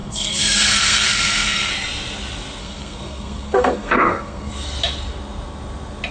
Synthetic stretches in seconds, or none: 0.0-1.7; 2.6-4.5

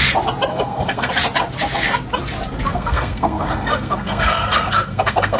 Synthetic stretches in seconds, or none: 0.5-1.1; 2.7-5.4

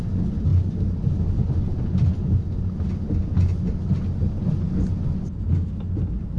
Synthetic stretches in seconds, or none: none